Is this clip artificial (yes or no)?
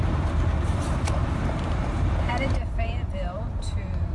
yes